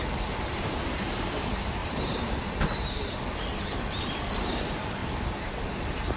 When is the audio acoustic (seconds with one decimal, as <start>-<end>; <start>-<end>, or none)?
0.0-1.8; 2.6-6.2